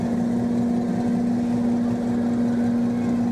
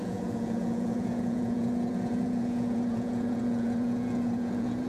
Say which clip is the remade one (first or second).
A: second